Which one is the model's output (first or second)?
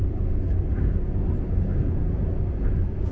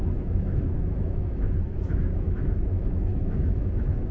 second